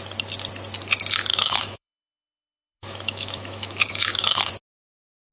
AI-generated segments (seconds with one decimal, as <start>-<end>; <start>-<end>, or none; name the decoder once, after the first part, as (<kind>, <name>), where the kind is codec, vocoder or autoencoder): 1.3-4.5 (autoencoder, DAC-VAE)